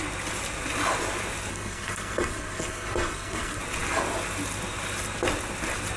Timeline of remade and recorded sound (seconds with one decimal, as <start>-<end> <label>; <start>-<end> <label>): 0.0-1.5 recorded; 1.5-3.6 remade; 3.6-6.0 recorded